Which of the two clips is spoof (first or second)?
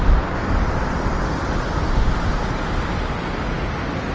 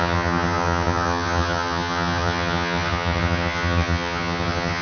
second